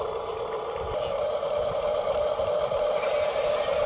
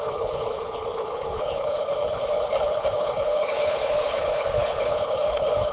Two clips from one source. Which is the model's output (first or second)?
second